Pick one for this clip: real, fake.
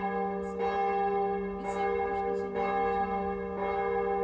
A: real